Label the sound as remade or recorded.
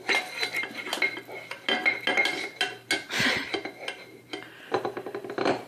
recorded